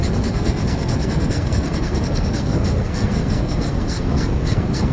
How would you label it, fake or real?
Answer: fake